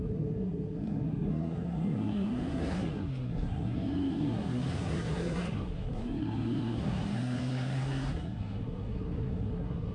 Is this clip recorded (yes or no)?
no